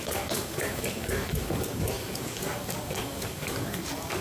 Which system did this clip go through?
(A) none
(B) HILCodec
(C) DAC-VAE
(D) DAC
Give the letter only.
D